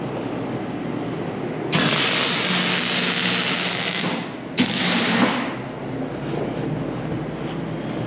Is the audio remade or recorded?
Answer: recorded